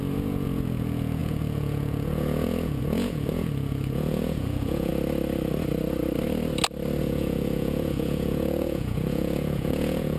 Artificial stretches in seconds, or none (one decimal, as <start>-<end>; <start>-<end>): 0.0-4.9; 7.0-10.2